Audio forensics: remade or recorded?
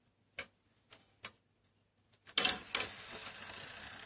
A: recorded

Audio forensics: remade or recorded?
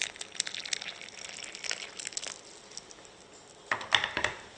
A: recorded